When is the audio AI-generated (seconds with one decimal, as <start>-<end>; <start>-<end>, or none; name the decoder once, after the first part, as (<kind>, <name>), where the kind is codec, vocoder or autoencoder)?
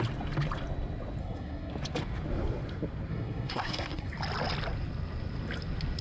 1.2-1.7 (codec, SNAC); 3.1-4.1